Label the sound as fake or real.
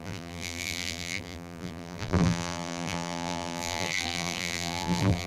fake